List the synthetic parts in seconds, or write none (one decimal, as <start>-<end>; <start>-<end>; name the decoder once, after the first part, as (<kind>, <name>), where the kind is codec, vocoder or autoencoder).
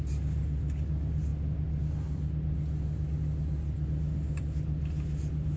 none